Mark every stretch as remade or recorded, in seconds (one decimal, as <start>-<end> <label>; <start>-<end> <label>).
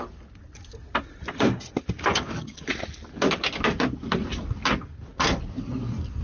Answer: 0.0-2.1 recorded; 2.1-2.7 remade; 2.7-6.2 recorded